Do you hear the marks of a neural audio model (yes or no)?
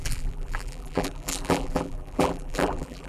yes